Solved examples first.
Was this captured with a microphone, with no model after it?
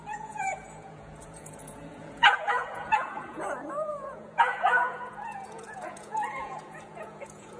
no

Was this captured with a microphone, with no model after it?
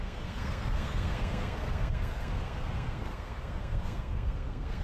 no